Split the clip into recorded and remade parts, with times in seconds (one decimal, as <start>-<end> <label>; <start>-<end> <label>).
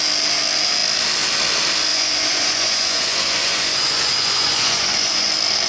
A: 0.0-1.9 recorded; 1.9-5.3 remade; 5.3-5.7 recorded